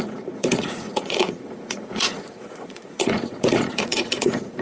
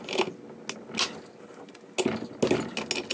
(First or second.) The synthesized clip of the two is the first